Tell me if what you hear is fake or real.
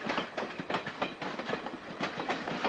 real